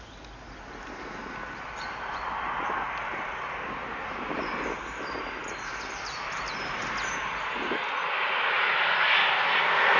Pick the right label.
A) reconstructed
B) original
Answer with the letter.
B